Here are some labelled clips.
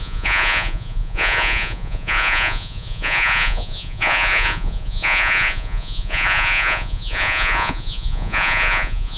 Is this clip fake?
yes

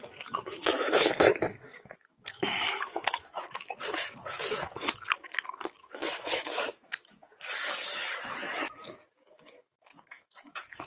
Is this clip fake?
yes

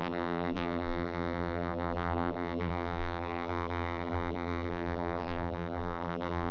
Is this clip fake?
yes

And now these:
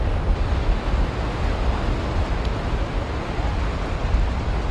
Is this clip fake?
no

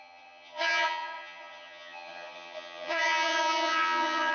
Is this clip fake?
yes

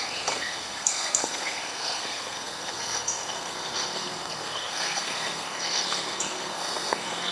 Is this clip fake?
yes